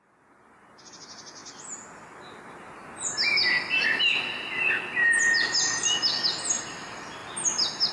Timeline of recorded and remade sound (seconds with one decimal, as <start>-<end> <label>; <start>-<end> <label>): 0.0-7.9 recorded